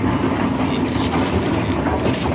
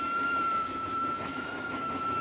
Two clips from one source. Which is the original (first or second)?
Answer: first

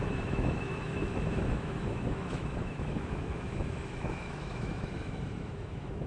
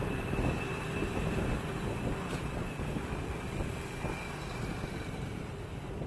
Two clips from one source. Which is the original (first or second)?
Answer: second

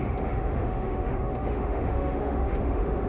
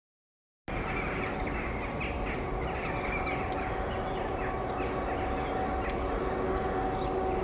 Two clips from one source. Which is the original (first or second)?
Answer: second